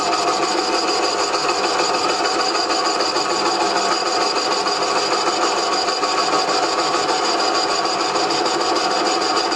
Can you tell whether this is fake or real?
real